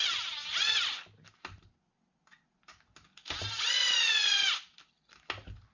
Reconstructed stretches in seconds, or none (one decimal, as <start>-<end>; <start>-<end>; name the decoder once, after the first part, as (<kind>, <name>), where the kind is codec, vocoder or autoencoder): none